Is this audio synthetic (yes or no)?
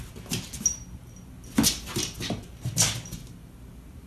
no